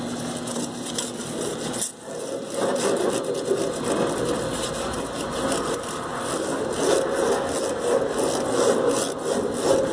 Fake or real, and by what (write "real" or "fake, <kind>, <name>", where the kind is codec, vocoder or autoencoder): real